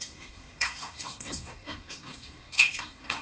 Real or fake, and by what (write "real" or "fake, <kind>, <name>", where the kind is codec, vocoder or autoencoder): fake, codec, SNAC